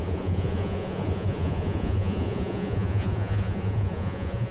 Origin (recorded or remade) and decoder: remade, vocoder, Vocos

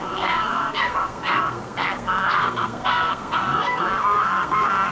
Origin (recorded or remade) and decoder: remade, codec, SNAC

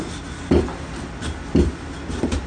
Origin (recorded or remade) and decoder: recorded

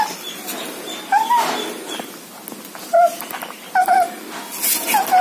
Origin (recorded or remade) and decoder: recorded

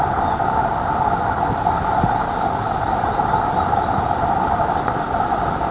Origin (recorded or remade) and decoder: recorded